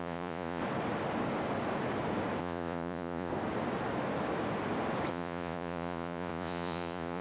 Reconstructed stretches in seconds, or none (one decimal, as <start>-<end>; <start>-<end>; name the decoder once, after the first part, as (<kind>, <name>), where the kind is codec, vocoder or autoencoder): 0.0-0.6 (vocoder, Vocos); 2.4-3.3; 5.1-7.2